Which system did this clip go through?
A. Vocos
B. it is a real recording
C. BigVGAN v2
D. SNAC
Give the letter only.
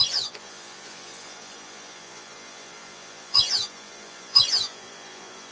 A